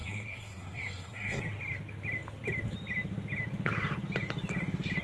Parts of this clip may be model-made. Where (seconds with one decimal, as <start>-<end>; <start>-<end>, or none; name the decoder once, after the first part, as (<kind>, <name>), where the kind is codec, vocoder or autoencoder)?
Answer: 0.0-1.4 (codec, SNAC)